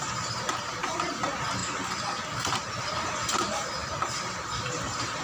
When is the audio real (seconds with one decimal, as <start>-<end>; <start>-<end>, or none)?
1.6-2.7